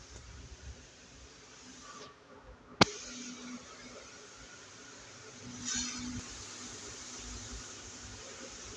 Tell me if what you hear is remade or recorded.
recorded